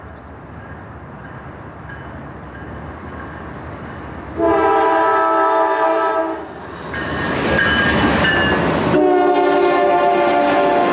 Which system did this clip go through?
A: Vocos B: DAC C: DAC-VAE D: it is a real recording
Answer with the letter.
D